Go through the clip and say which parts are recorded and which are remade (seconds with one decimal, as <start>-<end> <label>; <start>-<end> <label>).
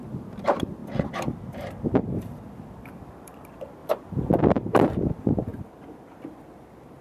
0.0-0.8 remade; 0.8-2.2 recorded; 2.2-7.0 remade